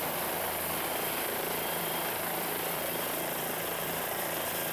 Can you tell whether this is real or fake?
fake